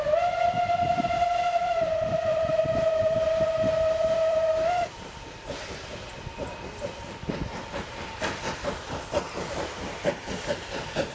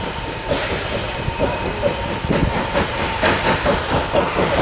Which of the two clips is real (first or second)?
second